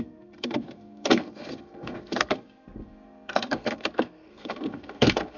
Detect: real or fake fake